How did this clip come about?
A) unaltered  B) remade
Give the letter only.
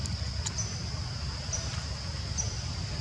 A